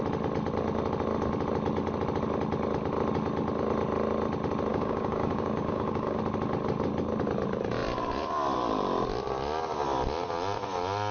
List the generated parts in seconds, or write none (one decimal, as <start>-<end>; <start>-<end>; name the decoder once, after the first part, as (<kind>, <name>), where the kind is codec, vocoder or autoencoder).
4.7-6.2 (codec, DAC)